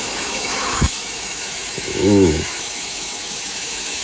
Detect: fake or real fake